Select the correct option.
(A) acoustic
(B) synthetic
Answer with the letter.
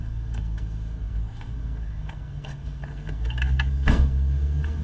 B